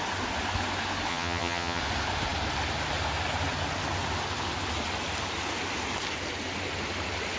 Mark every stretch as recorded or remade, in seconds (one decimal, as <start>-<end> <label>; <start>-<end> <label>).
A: 0.0-1.1 recorded; 1.1-1.8 remade; 1.8-7.4 recorded